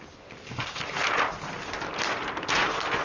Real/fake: real